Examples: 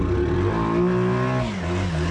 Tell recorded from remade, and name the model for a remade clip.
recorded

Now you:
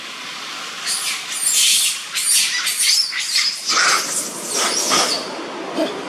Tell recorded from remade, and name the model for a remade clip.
recorded